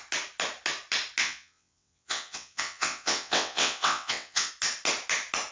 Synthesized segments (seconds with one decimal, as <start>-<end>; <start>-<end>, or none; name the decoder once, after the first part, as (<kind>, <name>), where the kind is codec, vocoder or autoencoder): 1.2-4.5 (vocoder, WaveNeXt)